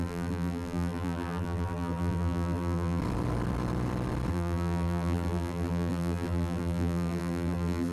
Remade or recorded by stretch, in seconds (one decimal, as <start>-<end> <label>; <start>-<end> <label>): 0.0-3.0 remade; 3.0-4.3 recorded; 4.3-7.9 remade